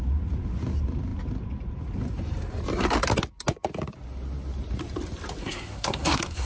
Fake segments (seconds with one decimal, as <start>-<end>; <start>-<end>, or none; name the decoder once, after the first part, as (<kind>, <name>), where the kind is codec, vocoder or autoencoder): 5.4-6.5 (codec, SNAC)